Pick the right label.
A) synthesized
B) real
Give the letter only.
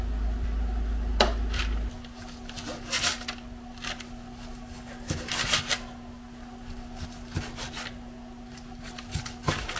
B